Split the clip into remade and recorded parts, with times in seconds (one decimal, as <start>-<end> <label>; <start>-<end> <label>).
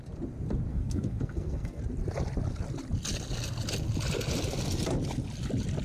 0.0-0.7 recorded; 0.7-1.8 remade; 1.8-5.8 recorded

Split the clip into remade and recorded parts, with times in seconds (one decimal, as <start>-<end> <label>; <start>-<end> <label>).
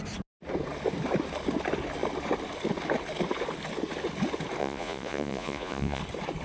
0.0-4.6 recorded; 4.6-6.0 remade; 6.0-6.4 recorded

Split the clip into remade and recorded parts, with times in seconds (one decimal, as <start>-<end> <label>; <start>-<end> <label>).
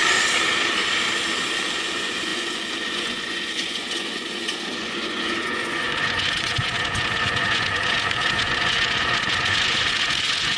0.0-1.7 recorded; 1.7-10.6 remade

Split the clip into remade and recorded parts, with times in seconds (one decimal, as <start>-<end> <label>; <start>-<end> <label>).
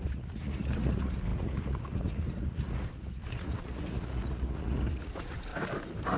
0.0-5.5 remade; 5.5-6.2 recorded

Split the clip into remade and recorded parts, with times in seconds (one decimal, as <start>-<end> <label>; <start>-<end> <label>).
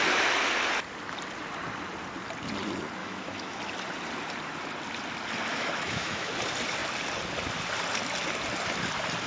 0.0-3.0 recorded; 3.0-3.6 remade; 3.6-5.5 recorded; 5.5-6.3 remade; 6.3-9.3 recorded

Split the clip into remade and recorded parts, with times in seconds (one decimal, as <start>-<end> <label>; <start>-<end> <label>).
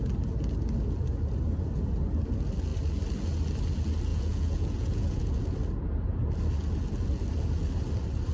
0.0-4.1 recorded; 4.1-5.4 remade; 5.4-8.3 recorded